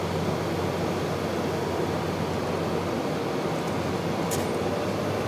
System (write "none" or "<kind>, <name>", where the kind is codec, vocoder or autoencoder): none